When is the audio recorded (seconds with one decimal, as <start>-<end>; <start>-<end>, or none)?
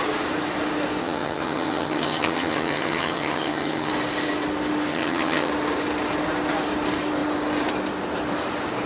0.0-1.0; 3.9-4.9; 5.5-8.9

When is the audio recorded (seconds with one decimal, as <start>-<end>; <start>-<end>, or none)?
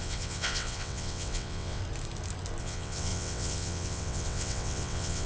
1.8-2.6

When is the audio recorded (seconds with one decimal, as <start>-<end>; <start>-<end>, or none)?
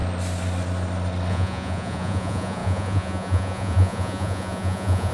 0.0-1.3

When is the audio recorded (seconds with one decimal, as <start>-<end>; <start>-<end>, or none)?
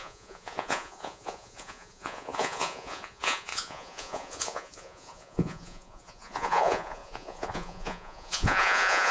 none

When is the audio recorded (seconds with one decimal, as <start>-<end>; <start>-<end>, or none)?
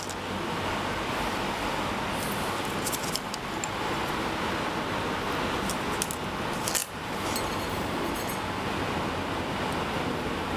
0.0-6.8; 8.3-10.6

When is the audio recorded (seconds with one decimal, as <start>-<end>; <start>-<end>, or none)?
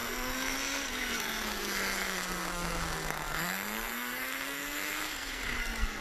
none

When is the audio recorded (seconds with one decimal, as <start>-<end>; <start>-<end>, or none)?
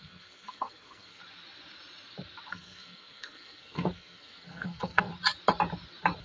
1.2-2.5; 5.1-6.2